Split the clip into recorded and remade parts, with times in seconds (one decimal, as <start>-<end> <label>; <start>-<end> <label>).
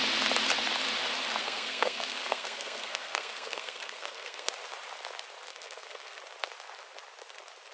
0.0-1.4 recorded; 1.4-4.5 remade; 4.5-5.5 recorded; 5.5-6.2 remade; 6.2-7.7 recorded